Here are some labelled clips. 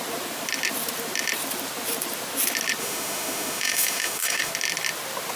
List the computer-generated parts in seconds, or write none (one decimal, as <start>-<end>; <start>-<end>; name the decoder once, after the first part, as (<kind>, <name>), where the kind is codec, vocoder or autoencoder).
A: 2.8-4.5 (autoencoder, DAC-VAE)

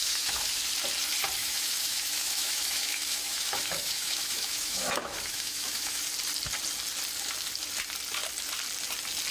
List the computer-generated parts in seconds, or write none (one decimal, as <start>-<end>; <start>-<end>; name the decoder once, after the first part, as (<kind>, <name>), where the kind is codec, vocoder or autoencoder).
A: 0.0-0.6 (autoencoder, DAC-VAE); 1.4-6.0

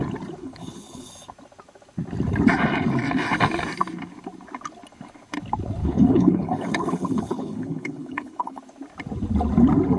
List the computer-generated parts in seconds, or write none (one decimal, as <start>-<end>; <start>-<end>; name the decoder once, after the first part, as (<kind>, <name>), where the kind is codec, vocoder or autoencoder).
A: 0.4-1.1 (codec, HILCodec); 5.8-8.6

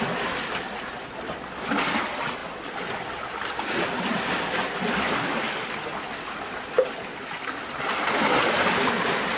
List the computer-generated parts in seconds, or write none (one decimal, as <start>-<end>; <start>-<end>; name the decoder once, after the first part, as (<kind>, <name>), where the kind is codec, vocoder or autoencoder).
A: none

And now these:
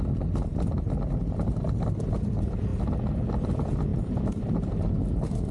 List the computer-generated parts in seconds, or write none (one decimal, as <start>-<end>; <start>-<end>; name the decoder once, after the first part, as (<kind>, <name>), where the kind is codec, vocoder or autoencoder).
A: 3.9-4.8 (vocoder, BigVGAN v2)